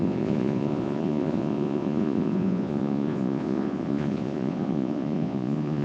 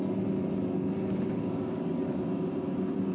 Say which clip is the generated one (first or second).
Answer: first